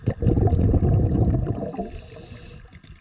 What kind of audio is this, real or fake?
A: real